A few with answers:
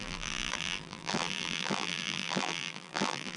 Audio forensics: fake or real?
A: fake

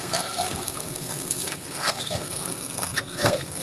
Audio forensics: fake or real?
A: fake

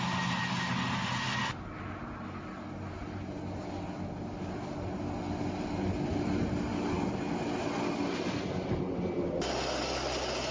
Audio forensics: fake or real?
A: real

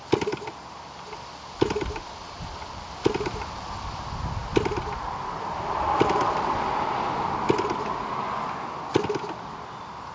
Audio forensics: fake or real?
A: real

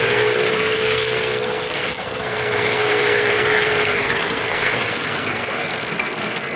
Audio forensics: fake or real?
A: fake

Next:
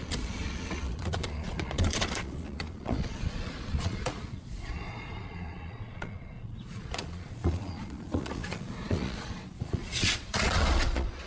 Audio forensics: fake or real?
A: fake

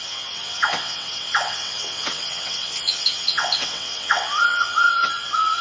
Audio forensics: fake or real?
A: fake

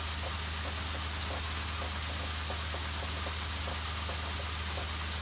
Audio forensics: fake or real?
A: real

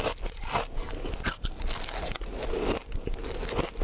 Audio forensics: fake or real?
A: real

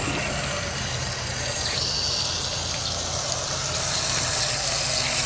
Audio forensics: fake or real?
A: real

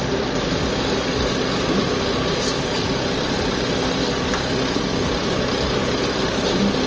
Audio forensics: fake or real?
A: real